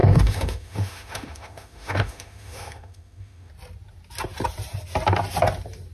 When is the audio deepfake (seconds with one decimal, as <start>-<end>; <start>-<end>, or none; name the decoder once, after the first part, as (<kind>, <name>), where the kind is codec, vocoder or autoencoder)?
0.0-3.5 (autoencoder, DAC-VAE)